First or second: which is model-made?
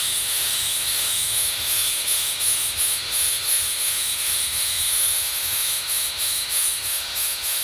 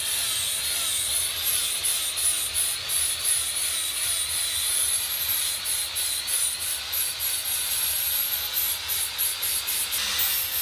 first